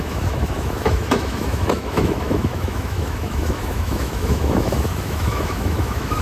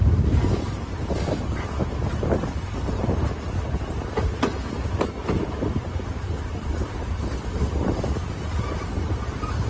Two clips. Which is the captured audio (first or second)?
second